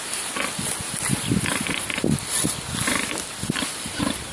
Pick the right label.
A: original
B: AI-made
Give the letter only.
A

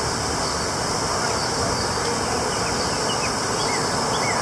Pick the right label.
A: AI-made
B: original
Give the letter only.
B